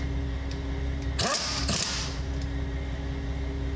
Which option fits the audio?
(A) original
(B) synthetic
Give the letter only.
A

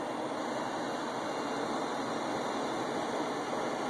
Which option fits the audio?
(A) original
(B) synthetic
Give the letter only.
A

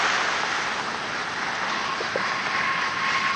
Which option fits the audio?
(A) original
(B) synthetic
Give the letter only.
A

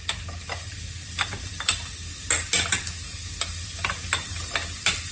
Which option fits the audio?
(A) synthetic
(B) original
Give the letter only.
B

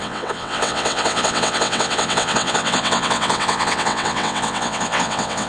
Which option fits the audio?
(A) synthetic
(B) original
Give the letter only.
A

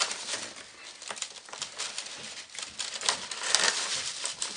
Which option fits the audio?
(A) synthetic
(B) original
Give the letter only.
B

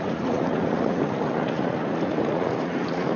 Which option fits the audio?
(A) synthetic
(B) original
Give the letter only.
A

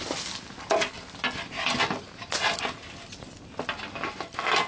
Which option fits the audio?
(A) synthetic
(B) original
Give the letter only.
B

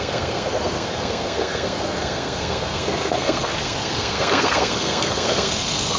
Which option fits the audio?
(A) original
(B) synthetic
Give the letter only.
B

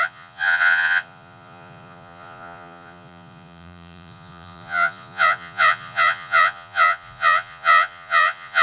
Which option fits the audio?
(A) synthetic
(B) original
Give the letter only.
A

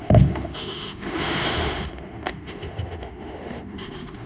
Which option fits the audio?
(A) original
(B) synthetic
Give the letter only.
B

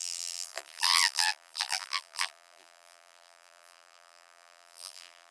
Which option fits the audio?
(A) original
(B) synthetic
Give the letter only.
B